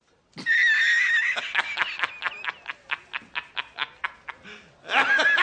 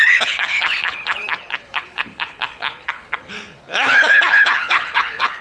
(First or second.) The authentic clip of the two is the first